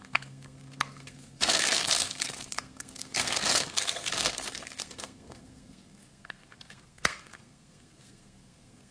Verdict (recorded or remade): remade